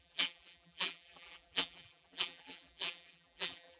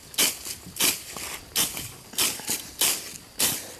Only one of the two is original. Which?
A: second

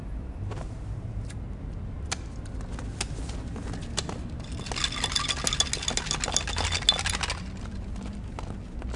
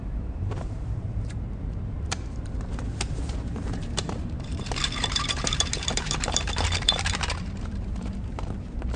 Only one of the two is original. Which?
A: first